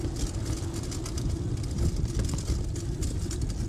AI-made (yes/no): no